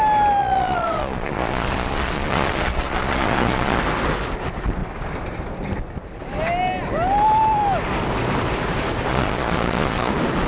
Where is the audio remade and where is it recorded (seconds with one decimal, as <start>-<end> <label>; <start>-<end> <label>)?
0.0-0.4 recorded; 0.4-3.8 remade; 3.8-9.1 recorded; 9.1-10.1 remade; 10.1-10.5 recorded